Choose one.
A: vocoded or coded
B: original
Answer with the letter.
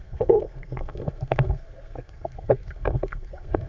A